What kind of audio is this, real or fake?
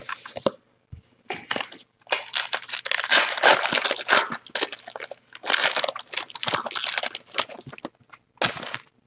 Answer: real